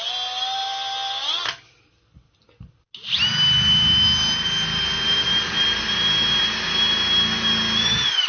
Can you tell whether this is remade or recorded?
recorded